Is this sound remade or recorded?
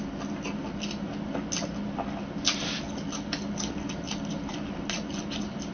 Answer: recorded